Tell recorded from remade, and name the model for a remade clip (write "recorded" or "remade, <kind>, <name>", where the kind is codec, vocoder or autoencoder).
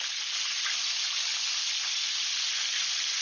recorded